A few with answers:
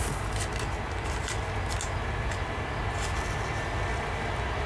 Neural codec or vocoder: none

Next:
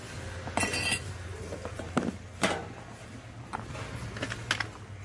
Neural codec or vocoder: none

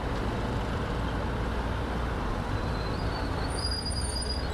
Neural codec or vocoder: none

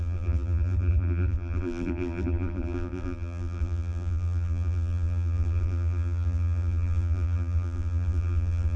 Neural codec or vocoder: vocoder, BigVGAN v2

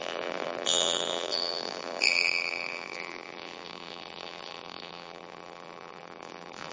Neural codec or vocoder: vocoder, BigVGAN v2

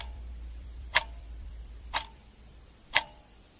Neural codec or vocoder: vocoder, BigVGAN v2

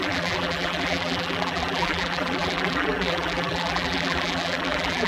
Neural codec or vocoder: vocoder, BigVGAN v2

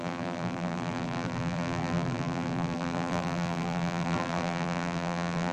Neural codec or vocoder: vocoder, BigVGAN v2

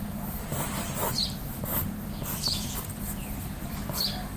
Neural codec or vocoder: vocoder, BigVGAN v2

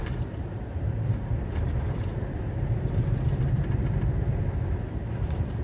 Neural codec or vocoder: vocoder, BigVGAN v2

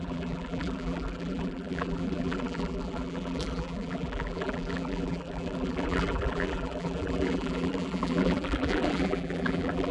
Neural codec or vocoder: vocoder, BigVGAN v2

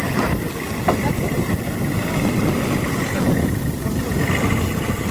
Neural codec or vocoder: none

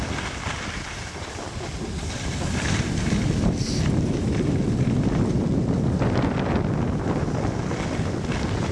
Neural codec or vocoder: none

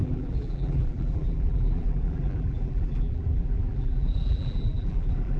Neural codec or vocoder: vocoder, BigVGAN v2